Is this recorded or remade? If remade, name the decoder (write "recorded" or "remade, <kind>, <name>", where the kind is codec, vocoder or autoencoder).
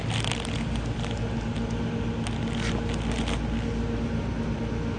recorded